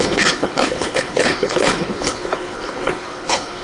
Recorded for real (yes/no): no